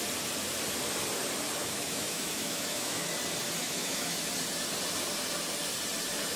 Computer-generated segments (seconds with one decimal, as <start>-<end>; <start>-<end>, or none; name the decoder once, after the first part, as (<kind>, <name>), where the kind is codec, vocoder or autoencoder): 1.6-3.1 (autoencoder, DAC-VAE); 3.6-4.2